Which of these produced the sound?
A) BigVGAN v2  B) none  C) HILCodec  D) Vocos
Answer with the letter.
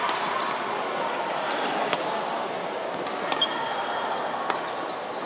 B